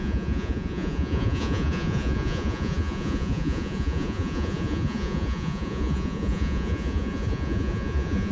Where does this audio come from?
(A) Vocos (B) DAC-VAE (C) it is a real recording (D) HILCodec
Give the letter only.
A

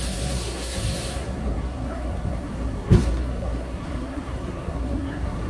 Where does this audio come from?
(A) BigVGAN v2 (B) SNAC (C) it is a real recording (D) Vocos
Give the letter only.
B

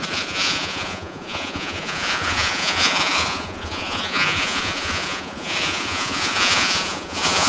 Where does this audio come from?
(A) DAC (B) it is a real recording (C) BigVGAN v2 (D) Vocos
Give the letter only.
D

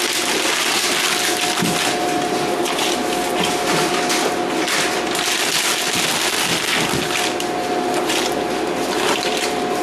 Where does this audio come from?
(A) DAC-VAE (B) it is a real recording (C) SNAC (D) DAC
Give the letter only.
B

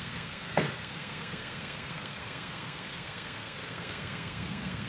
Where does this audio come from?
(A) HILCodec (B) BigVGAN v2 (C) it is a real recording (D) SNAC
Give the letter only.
D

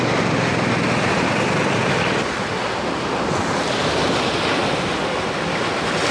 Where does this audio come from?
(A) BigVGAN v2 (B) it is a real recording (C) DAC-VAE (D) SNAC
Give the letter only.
B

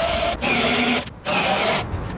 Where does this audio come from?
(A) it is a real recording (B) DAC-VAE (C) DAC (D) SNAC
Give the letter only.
A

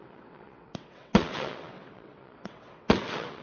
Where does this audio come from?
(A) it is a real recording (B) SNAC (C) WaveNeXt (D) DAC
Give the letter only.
C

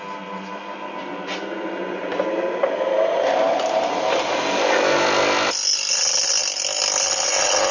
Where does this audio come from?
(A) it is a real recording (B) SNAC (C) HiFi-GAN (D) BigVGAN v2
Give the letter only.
A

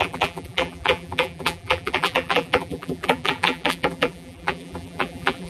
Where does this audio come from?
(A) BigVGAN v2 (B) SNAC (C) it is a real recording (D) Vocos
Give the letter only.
A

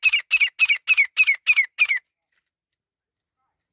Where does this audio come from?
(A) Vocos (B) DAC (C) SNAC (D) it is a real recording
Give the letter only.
D